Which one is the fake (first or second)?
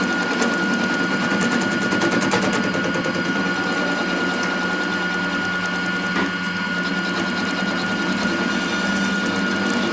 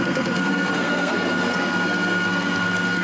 second